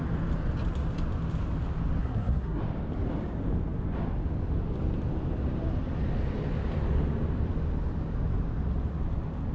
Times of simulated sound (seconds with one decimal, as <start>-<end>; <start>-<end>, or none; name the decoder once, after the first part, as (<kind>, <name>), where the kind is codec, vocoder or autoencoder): 2.0-2.6 (codec, SNAC)